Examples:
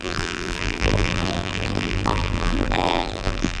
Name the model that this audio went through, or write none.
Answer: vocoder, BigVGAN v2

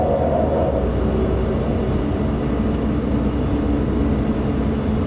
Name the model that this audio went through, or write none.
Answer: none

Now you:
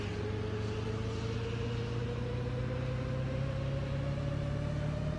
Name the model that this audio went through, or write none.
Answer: none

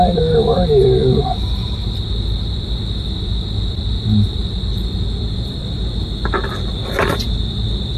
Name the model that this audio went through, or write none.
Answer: none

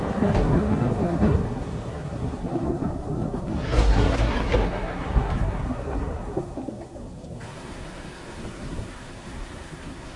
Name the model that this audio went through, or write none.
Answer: codec, SNAC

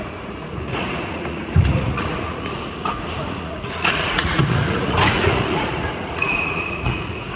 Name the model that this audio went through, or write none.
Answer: vocoder, Vocos